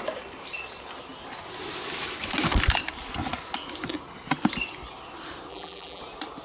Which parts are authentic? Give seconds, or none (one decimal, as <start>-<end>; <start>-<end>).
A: 0.0-5.5; 6.0-6.4